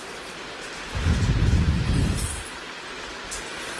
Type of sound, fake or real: real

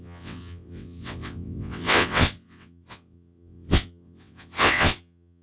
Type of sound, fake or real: fake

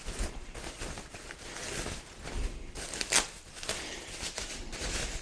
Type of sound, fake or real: real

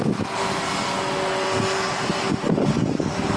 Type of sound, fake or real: real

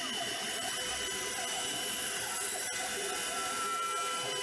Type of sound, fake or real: fake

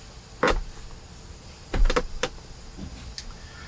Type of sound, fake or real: real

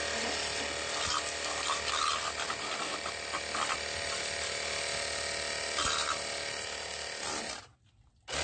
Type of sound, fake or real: real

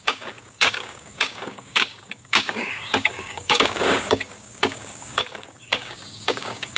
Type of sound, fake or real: fake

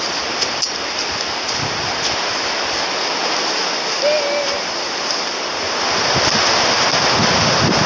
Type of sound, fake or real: real